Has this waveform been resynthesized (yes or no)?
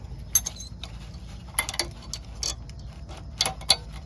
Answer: no